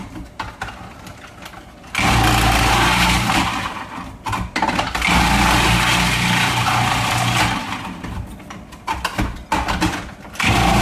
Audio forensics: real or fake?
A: real